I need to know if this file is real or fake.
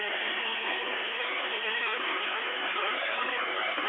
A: fake